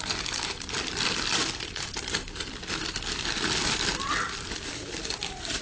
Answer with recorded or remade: remade